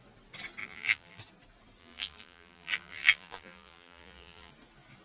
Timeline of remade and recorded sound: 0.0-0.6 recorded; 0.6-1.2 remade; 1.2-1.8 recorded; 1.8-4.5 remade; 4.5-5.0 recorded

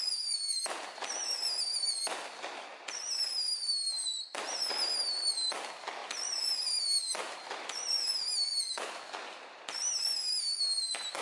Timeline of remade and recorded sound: 0.0-11.2 recorded

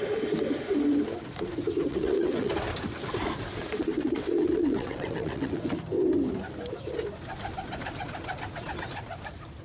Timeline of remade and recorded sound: 0.0-1.9 recorded; 1.9-2.5 remade; 2.5-3.8 recorded; 3.8-5.8 remade; 5.8-9.6 recorded

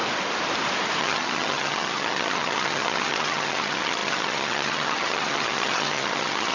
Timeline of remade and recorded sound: 0.0-1.0 recorded; 1.0-6.5 remade